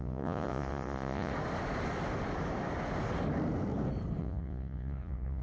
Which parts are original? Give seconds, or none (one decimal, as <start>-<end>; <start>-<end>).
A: 1.3-4.2